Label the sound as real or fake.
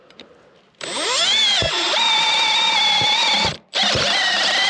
real